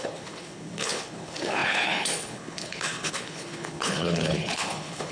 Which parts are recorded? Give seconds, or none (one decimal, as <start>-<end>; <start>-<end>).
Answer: none